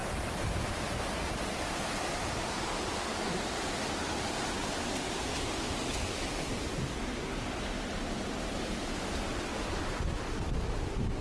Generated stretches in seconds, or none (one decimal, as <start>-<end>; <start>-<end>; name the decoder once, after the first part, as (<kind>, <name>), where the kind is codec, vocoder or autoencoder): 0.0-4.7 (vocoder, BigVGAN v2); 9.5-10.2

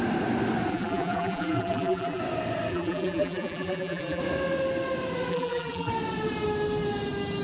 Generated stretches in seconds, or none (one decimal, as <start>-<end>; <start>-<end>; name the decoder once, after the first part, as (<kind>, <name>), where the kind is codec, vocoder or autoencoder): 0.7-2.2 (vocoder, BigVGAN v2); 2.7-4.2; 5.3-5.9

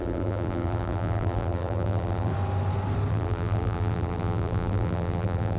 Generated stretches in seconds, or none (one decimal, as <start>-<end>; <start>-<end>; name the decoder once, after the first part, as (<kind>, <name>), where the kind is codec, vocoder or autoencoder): 0.0-2.3 (vocoder, BigVGAN v2); 3.1-5.6